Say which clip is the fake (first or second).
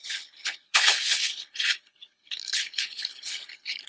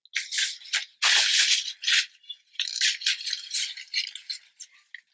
first